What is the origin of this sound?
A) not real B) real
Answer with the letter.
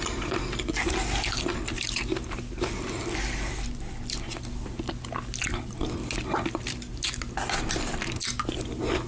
B